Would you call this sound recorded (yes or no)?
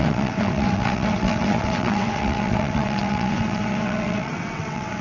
no